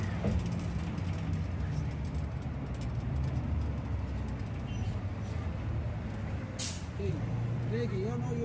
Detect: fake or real real